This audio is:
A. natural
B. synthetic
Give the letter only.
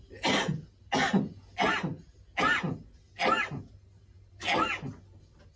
A